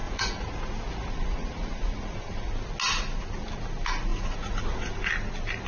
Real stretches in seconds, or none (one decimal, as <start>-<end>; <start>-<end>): 0.6-1.0; 2.5-4.1; 5.1-5.7